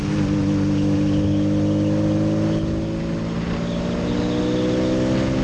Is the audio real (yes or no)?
yes